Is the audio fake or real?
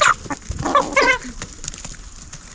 real